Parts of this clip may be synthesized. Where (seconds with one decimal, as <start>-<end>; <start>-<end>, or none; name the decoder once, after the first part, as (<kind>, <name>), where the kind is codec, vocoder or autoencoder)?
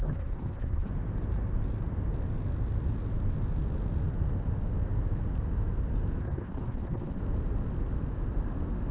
0.0-0.9 (codec, SNAC); 6.2-7.2